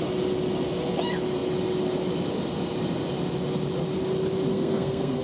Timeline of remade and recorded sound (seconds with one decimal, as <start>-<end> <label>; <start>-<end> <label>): 0.0-4.5 recorded; 4.5-5.2 remade